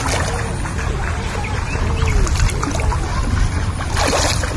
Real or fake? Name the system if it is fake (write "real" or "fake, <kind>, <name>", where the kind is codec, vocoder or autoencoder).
real